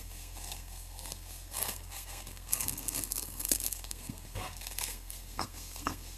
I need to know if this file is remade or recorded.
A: remade